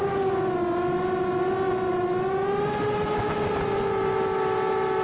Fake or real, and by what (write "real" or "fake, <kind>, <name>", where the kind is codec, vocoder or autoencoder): real